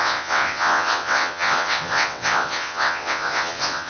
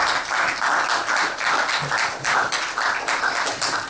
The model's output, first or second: first